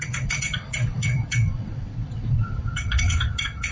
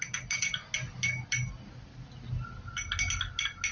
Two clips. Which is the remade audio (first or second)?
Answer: first